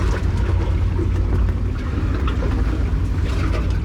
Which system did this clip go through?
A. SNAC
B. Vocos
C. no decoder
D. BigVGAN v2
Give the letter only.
C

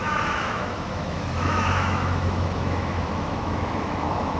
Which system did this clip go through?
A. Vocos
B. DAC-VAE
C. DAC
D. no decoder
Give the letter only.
B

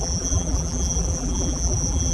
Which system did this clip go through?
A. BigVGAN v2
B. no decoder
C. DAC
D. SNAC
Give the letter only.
A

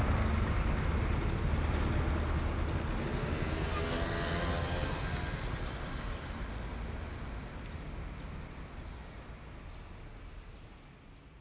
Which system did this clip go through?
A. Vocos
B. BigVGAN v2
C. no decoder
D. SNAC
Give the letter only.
C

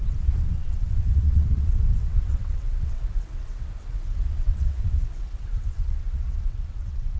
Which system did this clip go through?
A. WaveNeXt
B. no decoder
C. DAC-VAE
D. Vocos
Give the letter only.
A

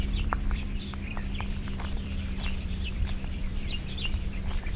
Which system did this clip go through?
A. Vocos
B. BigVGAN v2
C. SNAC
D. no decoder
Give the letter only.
B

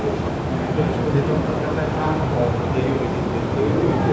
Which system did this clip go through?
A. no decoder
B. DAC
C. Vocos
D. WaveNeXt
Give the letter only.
A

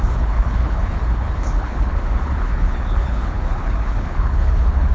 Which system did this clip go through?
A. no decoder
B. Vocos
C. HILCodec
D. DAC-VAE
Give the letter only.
C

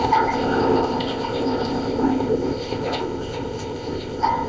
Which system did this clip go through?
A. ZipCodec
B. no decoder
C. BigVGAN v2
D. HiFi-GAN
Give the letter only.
A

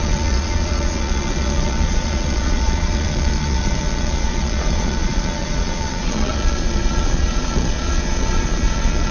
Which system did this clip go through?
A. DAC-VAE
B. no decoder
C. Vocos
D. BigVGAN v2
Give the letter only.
C